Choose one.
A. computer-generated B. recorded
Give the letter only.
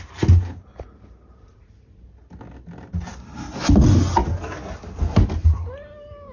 B